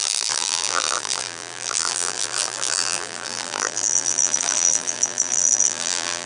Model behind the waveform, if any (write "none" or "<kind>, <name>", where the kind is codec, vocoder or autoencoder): vocoder, BigVGAN v2